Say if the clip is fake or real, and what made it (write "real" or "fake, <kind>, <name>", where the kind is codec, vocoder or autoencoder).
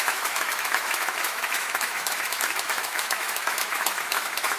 fake, autoencoder, DAC-VAE